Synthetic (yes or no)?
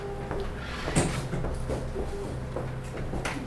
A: no